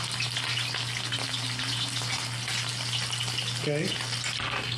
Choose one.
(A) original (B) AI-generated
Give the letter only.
A